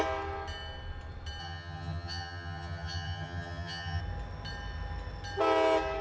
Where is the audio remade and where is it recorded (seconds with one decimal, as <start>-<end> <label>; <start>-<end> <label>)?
0.0-1.4 recorded; 1.4-4.0 remade; 4.0-6.0 recorded